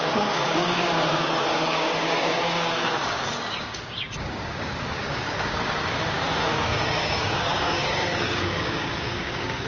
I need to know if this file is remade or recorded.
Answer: remade